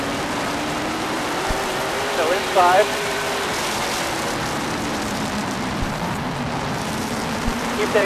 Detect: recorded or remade remade